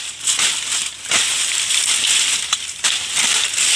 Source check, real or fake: fake